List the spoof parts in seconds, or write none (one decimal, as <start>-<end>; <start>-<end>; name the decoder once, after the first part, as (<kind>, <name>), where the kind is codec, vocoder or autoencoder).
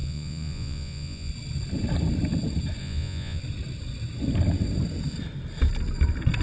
0.0-1.3 (vocoder, Vocos); 2.8-3.4